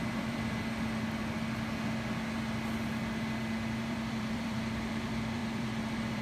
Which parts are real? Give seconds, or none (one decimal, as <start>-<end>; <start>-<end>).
1.2-3.8